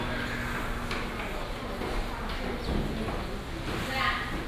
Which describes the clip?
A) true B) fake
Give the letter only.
A